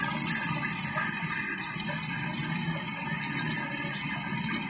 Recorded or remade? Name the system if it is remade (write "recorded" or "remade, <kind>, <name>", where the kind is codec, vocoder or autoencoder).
recorded